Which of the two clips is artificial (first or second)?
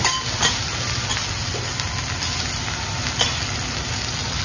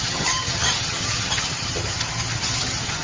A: second